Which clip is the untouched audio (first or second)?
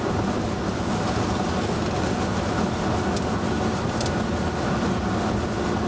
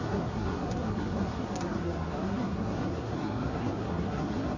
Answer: first